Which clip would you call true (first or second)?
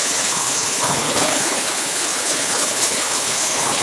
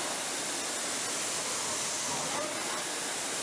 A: second